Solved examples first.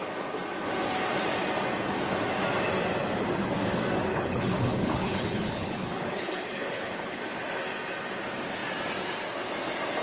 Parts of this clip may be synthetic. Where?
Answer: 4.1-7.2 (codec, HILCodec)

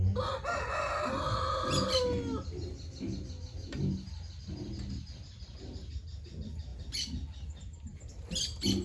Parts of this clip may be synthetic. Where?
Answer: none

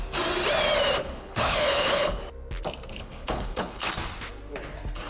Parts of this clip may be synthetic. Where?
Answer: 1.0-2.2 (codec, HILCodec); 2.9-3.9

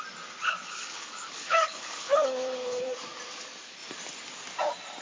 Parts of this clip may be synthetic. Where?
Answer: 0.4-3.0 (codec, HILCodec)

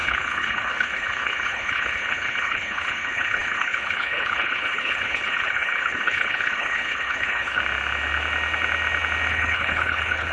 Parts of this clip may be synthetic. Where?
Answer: 0.0-7.6 (codec, HILCodec); 9.3-10.3